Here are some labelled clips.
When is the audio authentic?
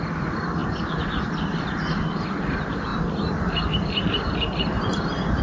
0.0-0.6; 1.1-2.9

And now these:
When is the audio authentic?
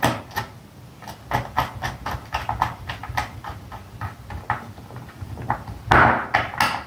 0.0-6.9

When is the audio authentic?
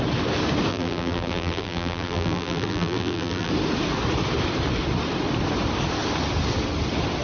0.0-0.7; 3.5-7.2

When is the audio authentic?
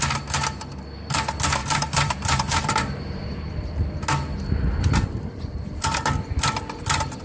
0.0-1.6; 4.0-7.2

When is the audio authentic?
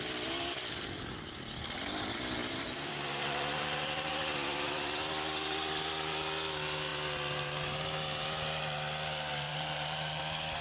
0.0-2.4; 4.1-9.5; 10.2-10.6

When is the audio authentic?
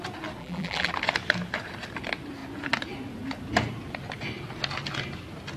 0.0-0.4; 0.9-5.6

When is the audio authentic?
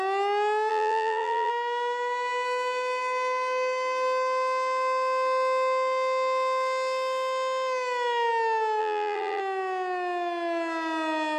0.0-0.7; 1.5-8.8; 9.4-11.4